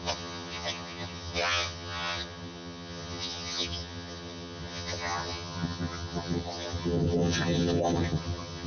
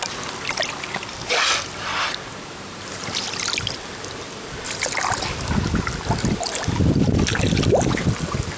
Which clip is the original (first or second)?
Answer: second